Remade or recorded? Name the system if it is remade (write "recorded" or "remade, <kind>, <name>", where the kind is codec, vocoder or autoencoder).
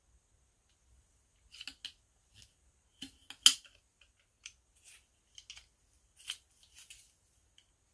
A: recorded